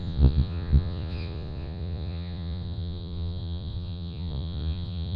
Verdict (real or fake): fake